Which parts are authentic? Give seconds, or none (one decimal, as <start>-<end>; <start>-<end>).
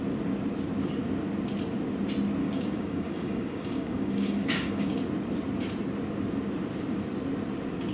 0.0-2.4; 4.9-7.9